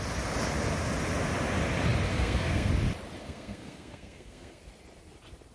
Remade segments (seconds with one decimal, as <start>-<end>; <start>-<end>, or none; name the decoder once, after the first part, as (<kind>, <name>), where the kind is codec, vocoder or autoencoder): 2.1-2.7 (codec, SNAC); 3.2-4.6